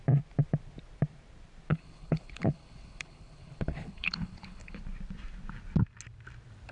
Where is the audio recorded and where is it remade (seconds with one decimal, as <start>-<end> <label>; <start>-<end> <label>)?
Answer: 0.0-1.7 recorded; 1.7-4.8 remade; 4.8-6.7 recorded